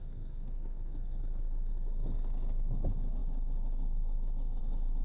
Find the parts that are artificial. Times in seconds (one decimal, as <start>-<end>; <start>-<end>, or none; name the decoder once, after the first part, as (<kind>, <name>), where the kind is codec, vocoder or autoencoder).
0.0-1.2 (codec, SNAC)